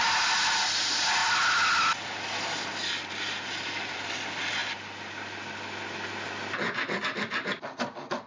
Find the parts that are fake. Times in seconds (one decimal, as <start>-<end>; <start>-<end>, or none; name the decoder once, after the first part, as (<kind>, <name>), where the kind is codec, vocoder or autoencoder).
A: 0.0-1.2 (vocoder, BigVGAN v2); 3.1-4.6; 7.0-8.3